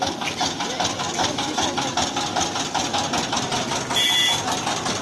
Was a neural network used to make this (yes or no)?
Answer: no